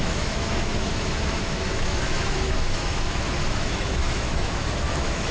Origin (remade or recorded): remade